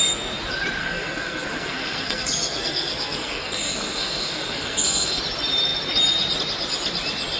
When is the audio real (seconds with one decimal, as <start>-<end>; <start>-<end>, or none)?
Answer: 0.0-0.8; 5.2-7.4